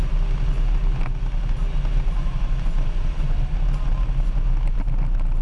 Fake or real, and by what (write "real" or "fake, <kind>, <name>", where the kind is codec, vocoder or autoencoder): real